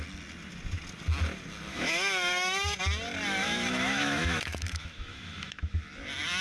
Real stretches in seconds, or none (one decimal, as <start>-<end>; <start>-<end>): 0.0-1.7; 2.8-3.4; 5.8-6.4